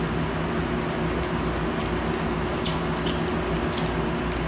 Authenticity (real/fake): real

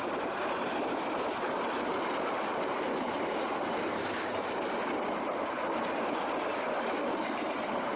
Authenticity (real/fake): real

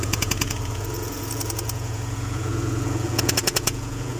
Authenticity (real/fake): fake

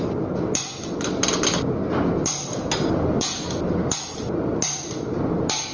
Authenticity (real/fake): real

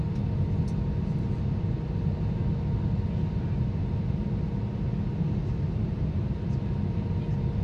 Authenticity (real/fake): real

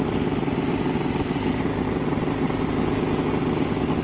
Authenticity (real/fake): real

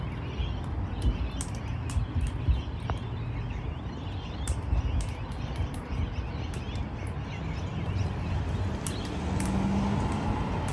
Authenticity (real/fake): real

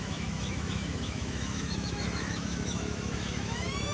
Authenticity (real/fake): fake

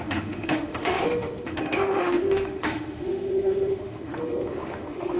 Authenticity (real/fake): fake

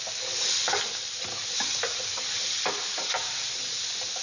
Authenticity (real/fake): real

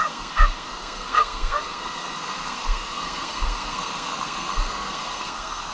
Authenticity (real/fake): fake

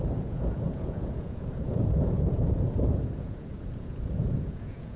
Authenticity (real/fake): fake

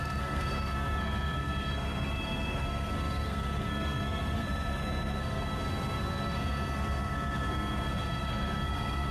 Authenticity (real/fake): fake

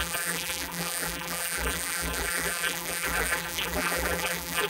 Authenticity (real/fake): fake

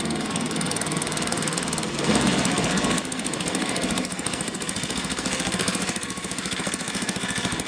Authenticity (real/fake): fake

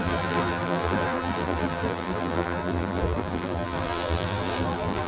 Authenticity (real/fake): fake